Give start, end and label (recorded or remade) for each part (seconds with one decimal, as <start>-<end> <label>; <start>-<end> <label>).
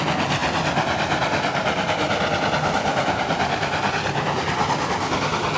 0.0-5.6 recorded